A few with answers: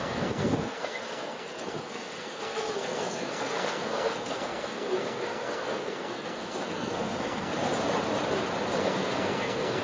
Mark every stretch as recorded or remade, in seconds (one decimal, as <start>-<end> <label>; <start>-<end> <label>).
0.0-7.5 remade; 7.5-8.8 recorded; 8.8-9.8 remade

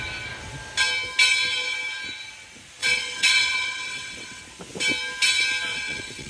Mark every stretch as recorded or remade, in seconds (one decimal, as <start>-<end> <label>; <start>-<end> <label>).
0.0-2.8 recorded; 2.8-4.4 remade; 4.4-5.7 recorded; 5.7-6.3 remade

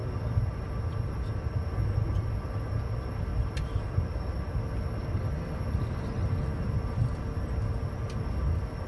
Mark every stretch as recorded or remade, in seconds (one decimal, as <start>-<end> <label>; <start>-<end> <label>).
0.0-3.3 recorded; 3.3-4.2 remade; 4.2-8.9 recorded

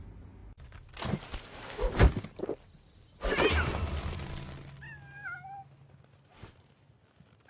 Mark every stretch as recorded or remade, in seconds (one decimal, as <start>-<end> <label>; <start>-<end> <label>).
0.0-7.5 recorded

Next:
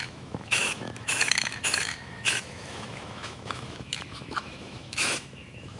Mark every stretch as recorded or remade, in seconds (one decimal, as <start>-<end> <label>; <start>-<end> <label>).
0.0-5.8 remade

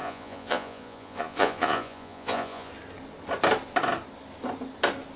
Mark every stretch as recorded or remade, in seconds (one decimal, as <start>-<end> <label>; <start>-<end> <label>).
0.0-2.7 remade; 2.7-5.2 recorded

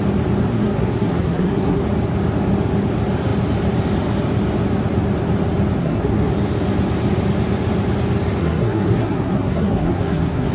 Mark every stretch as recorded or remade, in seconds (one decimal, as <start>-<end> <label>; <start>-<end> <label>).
0.0-0.5 recorded; 0.5-1.8 remade; 1.8-5.8 recorded; 5.8-6.3 remade; 6.3-8.4 recorded; 8.4-10.5 remade

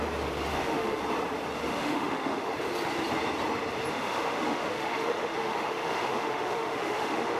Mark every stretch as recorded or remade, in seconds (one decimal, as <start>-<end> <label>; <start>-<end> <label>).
0.0-0.5 recorded; 0.5-1.0 remade; 1.0-1.7 recorded; 1.7-2.5 remade; 2.5-3.9 recorded; 3.9-7.4 remade